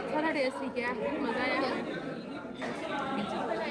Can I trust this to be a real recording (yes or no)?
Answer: yes